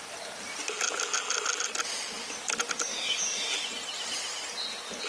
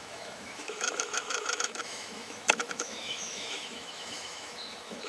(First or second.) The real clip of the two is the first